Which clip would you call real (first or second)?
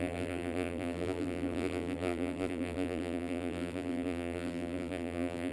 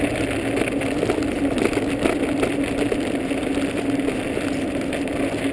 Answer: second